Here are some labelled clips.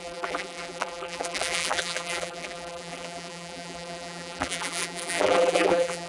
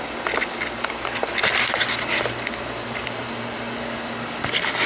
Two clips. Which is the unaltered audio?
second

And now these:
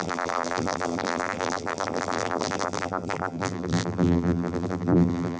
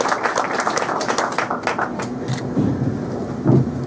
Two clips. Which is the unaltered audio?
second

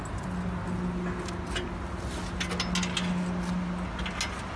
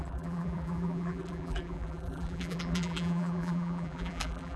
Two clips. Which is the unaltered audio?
first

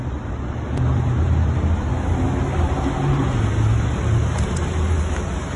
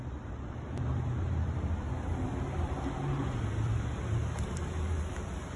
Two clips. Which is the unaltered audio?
first